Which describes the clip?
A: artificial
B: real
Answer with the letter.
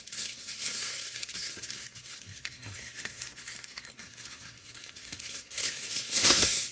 A